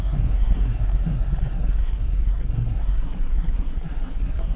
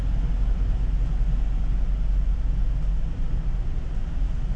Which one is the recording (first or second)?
second